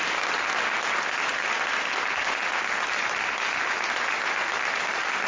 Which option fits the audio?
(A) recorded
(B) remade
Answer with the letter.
A